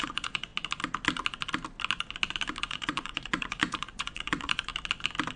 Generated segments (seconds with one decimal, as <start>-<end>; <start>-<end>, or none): 0.0-0.5; 2.6-4.7